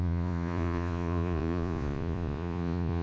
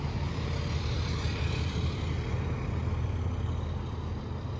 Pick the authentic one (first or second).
second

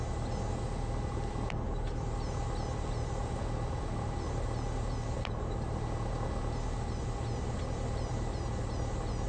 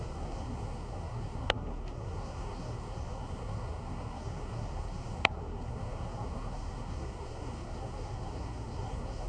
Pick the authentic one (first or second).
first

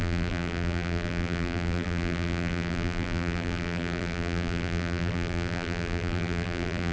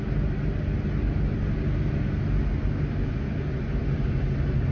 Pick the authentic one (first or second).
second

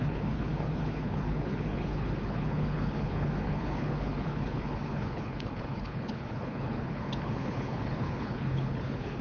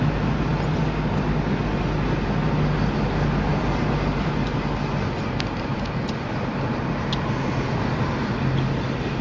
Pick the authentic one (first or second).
second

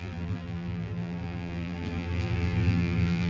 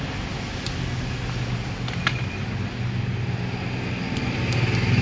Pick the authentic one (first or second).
second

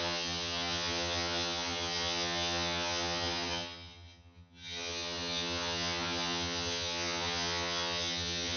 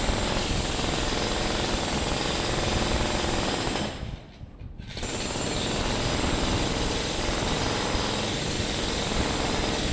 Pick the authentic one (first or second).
second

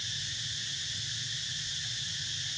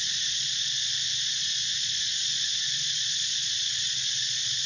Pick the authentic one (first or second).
first